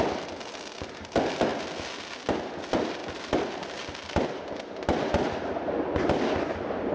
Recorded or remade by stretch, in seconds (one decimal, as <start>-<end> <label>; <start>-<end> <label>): 0.0-6.9 recorded